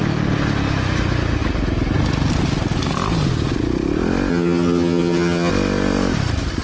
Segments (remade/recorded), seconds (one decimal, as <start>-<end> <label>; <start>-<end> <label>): 0.0-4.3 recorded; 4.3-5.5 remade; 5.5-6.6 recorded